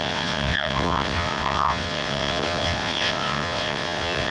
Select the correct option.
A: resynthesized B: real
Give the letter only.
A